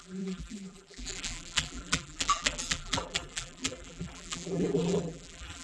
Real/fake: fake